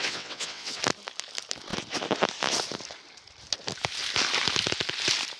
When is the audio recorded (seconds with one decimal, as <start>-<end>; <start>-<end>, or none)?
0.8-5.4